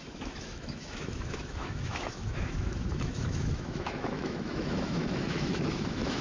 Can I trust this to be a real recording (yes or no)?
no